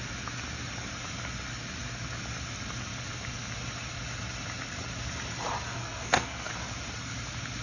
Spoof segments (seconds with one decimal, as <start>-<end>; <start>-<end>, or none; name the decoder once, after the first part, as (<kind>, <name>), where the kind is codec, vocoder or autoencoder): 5.8-6.5 (codec, SNAC)